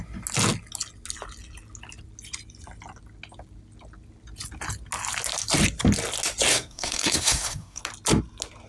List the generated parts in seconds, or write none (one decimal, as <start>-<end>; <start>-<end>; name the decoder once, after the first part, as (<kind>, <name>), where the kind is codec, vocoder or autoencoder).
6.5-7.8 (codec, SNAC)